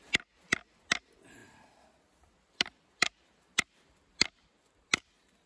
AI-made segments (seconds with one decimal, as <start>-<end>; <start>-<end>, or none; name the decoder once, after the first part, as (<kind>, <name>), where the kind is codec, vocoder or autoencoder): none